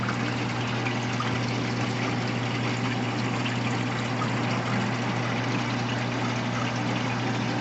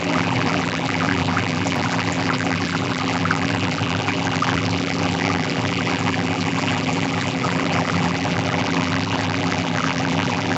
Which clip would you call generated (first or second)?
second